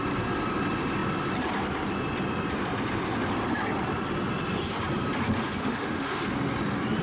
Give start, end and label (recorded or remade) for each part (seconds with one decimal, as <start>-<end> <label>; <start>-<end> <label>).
0.0-5.6 recorded; 5.6-6.2 remade; 6.2-7.0 recorded